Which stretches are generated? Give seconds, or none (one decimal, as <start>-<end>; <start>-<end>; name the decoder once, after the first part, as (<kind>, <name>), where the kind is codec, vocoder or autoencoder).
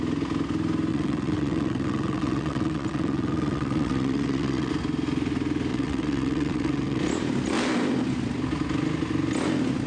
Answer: 0.9-4.7 (vocoder, WaveNeXt); 5.7-7.0